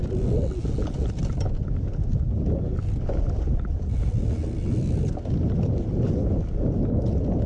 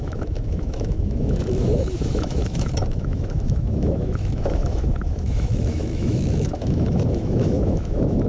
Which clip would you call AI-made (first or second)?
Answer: second